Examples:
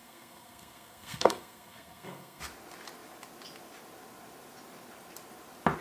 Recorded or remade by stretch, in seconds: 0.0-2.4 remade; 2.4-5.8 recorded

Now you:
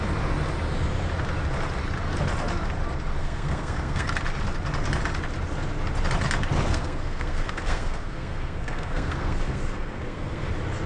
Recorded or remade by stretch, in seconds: 0.0-3.2 recorded; 3.2-4.1 remade; 4.1-6.7 recorded; 6.7-10.5 remade; 10.5-10.9 recorded

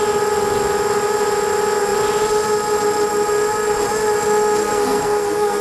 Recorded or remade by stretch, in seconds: 0.0-4.6 recorded; 4.6-5.6 remade

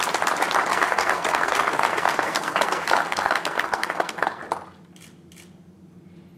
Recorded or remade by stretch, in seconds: 0.0-0.7 recorded; 0.7-4.4 remade; 4.4-6.4 recorded